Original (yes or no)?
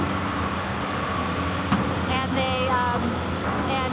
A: yes